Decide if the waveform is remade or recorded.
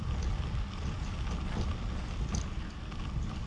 recorded